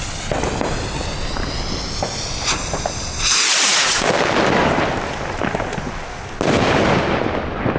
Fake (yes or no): no